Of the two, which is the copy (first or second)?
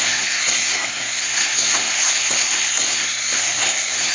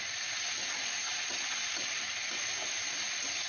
first